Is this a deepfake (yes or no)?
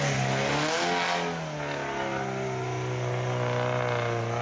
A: no